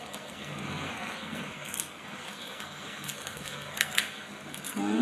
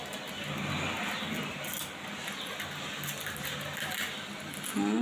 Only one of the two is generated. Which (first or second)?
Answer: first